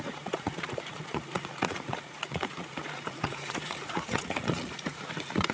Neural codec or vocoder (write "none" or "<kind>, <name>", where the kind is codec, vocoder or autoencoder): vocoder, Vocos